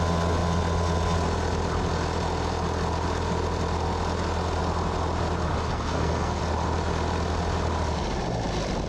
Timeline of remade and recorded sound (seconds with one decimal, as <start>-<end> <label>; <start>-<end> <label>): 0.0-5.5 recorded; 5.5-6.4 remade; 6.4-8.9 recorded